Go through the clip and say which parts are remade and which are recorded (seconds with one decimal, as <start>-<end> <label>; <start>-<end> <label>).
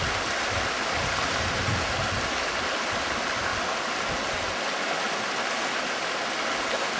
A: 0.0-7.0 recorded